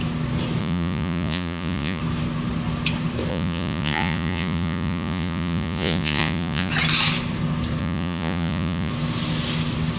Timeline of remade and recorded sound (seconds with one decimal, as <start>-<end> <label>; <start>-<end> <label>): 0.0-0.6 recorded; 0.6-2.0 remade; 2.0-3.3 recorded; 3.3-6.7 remade; 6.7-7.8 recorded; 7.8-8.9 remade; 8.9-10.0 recorded